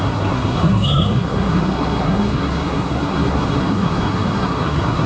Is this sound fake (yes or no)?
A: yes